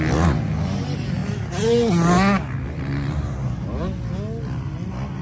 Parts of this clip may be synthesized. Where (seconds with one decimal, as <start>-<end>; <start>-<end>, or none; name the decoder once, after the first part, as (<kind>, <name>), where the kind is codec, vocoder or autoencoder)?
none